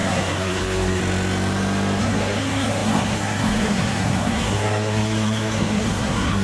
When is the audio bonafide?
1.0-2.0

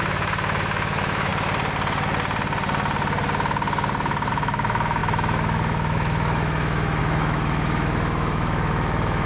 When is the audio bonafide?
1.3-4.3

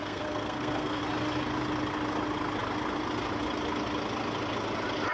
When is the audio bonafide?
1.0-5.1

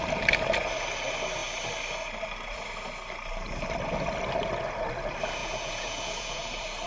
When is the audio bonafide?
0.0-5.4; 6.5-6.9